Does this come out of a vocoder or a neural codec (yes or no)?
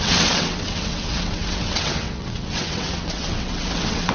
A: yes